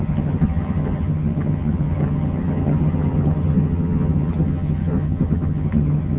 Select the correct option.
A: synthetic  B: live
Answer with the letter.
A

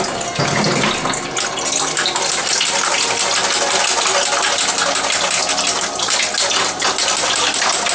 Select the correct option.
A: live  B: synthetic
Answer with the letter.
A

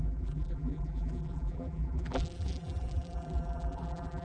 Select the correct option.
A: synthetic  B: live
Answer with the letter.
A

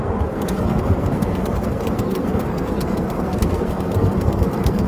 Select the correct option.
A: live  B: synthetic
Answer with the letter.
B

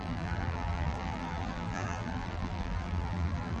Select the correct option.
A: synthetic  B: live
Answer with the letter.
A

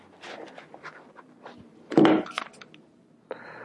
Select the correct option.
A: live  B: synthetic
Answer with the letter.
A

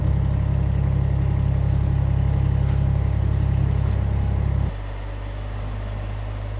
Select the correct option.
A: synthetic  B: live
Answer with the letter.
B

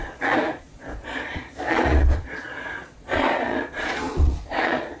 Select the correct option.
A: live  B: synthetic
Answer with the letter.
B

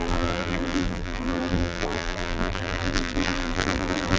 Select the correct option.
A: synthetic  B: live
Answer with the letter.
A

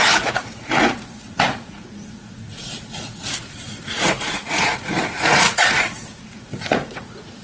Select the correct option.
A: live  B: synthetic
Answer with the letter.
B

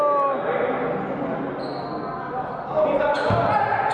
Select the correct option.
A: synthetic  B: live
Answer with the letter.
B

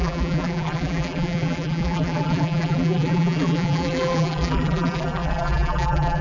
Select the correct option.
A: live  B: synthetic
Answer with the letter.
B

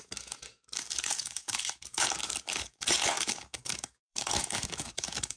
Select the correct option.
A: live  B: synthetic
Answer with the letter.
B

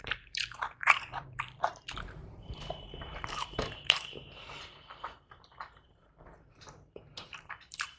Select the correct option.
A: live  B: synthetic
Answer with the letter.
B